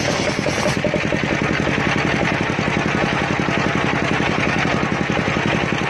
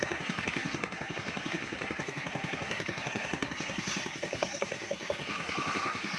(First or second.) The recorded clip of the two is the first